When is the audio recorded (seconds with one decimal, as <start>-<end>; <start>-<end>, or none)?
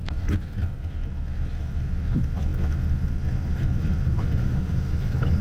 0.0-4.4; 4.9-5.4